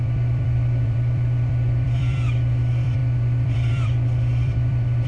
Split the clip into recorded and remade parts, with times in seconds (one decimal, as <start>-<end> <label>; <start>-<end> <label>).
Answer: 0.0-5.1 remade

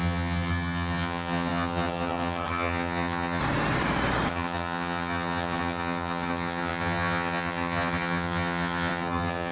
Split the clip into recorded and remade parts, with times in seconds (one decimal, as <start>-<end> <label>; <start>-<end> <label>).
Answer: 0.0-3.4 remade; 3.4-4.3 recorded; 4.3-9.5 remade

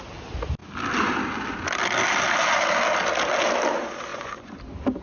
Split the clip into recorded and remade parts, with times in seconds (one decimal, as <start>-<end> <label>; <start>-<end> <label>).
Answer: 0.0-4.1 recorded; 4.1-4.6 remade; 4.6-5.0 recorded

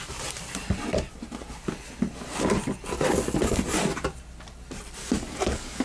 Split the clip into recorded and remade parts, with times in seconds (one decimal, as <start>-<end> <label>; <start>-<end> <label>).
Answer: 0.0-5.0 recorded; 5.0-5.8 remade